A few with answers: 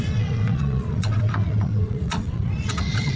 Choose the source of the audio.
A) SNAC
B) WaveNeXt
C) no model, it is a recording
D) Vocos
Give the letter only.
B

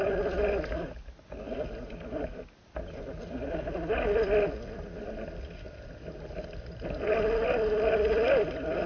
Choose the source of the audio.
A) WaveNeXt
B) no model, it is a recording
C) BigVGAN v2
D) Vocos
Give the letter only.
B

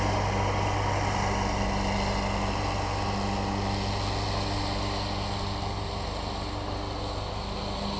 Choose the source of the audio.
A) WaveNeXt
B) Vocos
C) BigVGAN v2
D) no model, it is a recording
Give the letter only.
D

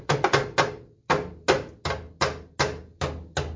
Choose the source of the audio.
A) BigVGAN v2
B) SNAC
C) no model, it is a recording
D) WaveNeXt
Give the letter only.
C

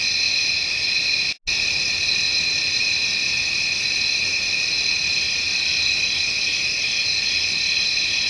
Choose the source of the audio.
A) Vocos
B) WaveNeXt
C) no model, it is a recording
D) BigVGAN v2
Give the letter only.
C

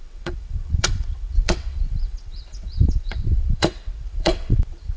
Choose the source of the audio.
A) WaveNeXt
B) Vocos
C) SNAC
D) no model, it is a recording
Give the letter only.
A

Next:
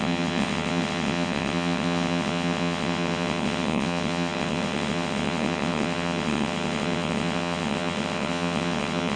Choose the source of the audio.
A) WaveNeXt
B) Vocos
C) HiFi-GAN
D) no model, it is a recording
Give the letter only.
A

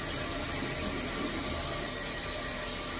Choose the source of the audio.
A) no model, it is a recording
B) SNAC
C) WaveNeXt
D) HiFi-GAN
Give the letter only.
A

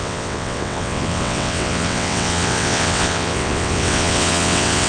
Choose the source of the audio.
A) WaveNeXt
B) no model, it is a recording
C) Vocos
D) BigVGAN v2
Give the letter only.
A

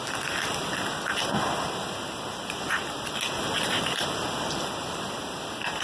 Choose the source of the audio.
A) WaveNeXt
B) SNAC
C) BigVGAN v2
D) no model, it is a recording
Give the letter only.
D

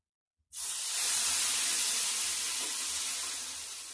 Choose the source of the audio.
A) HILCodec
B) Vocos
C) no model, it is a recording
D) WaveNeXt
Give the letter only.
C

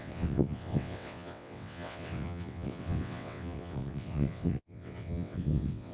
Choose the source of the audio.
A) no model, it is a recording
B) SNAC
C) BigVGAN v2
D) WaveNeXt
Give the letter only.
D